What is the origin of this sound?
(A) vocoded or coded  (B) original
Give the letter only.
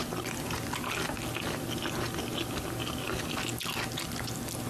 B